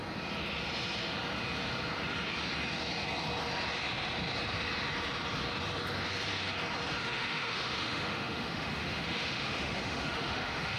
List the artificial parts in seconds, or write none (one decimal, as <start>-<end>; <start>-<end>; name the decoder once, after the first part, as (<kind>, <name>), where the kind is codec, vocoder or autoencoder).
7.0-10.8 (autoencoder, DAC-VAE)